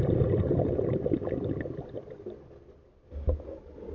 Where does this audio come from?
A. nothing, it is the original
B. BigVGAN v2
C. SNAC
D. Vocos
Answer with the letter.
A